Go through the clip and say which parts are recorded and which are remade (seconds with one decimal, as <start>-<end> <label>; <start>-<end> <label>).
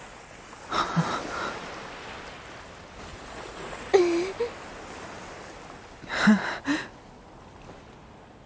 0.0-3.1 recorded; 3.1-4.0 remade; 4.0-8.5 recorded